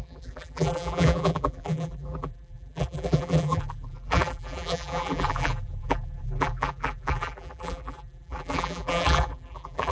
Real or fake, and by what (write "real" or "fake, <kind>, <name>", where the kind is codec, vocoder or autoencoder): fake, vocoder, BigVGAN v2